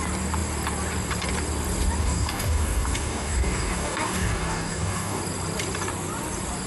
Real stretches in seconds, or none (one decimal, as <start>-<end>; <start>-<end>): 0.0-2.0; 5.2-6.7